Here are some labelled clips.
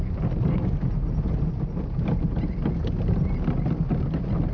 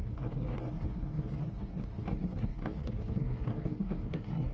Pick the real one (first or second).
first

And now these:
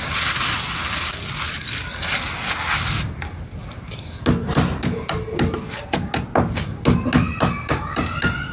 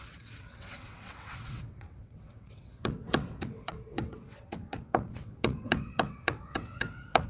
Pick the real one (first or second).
first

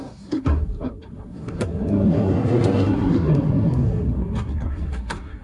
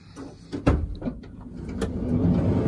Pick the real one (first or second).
second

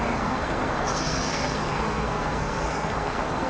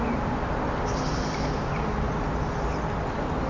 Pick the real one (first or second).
second